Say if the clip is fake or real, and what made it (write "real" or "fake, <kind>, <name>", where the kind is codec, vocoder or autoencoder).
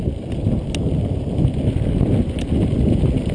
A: real